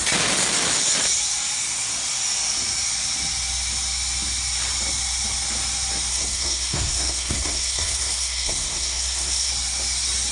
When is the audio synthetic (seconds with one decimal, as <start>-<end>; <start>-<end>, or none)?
6.1-9.5